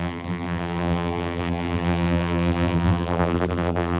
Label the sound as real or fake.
fake